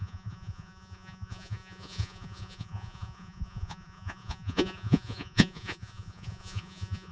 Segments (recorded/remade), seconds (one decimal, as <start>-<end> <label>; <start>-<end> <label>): 0.0-7.1 remade